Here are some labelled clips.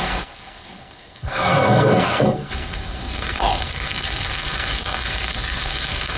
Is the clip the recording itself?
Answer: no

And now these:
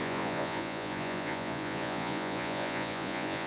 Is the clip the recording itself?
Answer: no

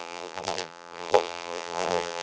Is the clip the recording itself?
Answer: no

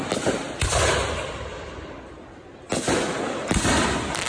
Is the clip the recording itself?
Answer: yes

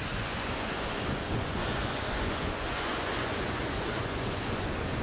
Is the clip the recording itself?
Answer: no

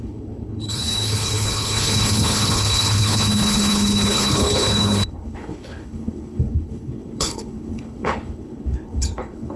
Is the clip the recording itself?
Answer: no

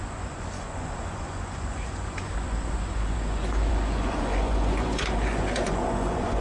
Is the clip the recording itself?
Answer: no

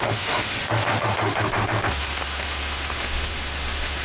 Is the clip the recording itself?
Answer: no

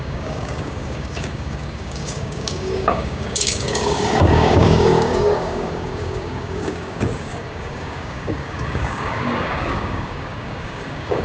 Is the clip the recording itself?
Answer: no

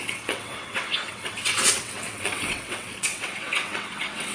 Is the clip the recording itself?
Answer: no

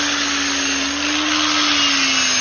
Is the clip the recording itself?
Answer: yes